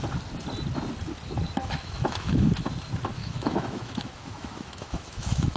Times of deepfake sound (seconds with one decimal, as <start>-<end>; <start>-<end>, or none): 1.6-2.5; 3.2-5.6